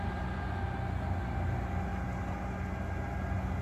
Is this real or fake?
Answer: real